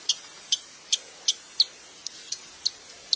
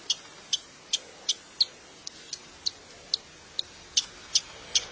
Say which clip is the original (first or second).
second